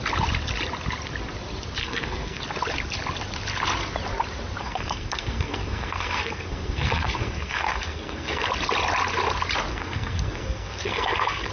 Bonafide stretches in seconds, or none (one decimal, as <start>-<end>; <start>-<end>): 0.0-1.8; 2.4-4.6; 8.5-9.7